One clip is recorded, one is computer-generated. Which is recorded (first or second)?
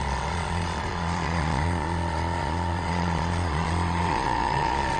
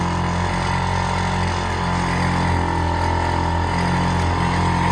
second